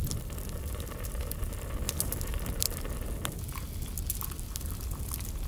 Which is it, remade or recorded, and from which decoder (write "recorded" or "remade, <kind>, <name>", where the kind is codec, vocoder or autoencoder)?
recorded